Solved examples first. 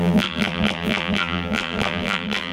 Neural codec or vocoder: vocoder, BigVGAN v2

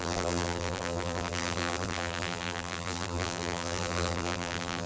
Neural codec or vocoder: vocoder, BigVGAN v2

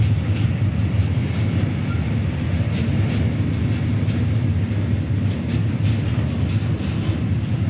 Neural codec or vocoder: none